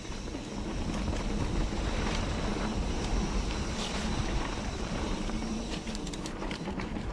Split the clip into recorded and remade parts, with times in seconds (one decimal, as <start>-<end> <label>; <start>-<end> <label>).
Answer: 0.0-2.5 recorded; 2.5-7.1 remade